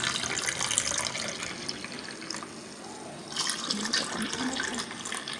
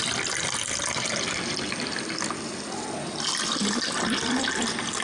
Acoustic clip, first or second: first